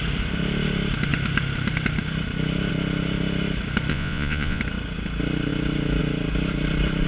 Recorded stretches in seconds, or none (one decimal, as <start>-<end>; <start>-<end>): 0.0-3.9; 4.6-7.1